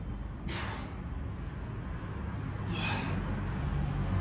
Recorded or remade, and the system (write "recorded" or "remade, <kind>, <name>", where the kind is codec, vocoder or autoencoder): recorded